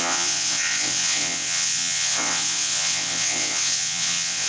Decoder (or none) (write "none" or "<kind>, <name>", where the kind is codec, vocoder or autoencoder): vocoder, WaveNeXt